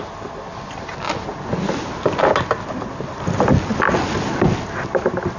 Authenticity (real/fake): real